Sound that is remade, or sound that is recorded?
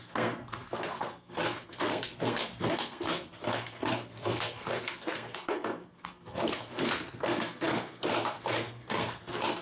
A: remade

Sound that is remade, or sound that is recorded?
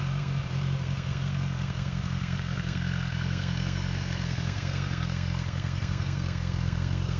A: remade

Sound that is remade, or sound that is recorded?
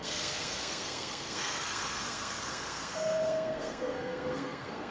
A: remade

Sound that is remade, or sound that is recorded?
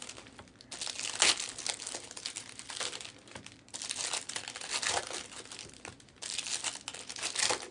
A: recorded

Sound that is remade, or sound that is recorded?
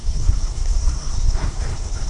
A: remade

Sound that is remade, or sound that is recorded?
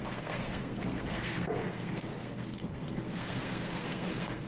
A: remade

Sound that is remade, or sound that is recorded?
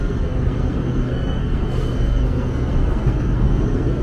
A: remade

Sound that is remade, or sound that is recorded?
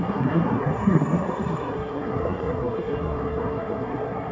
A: remade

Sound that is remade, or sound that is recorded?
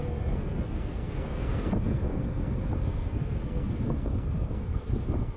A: remade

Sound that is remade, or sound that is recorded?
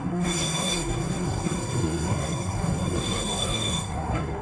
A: remade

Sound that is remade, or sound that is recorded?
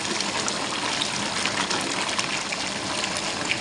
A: recorded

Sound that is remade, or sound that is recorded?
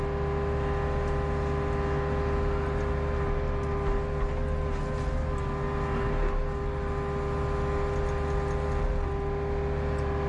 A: recorded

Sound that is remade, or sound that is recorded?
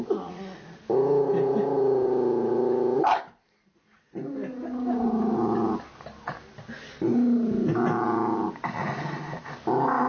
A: recorded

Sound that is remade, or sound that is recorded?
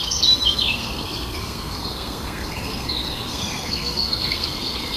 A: remade